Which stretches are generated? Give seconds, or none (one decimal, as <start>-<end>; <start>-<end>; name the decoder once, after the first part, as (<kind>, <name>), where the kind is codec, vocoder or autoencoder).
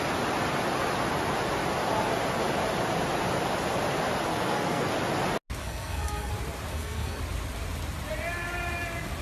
4.3-4.9 (codec, SNAC); 5.6-6.3; 6.7-7.2